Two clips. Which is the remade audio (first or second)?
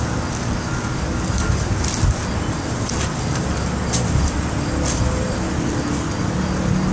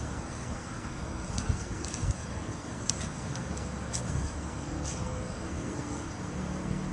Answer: second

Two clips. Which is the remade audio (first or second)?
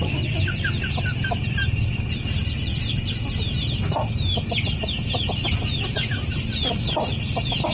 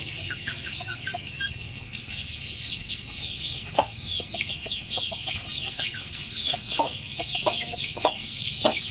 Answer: second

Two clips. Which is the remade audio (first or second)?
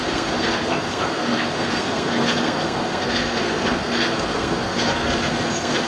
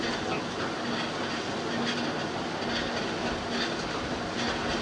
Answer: first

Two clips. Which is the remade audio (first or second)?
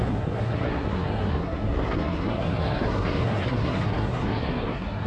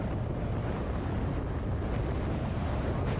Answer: first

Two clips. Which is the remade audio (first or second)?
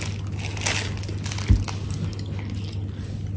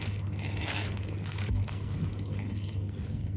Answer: second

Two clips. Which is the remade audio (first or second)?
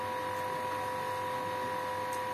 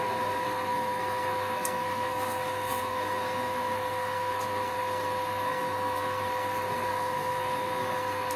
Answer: second